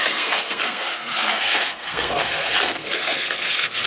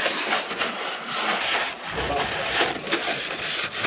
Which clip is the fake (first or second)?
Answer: first